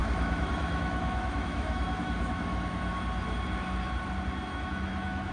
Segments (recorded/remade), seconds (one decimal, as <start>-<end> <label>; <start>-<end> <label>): 0.0-2.8 remade; 2.8-4.5 recorded; 4.5-5.3 remade